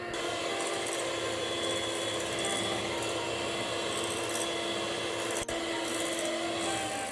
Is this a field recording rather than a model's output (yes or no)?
yes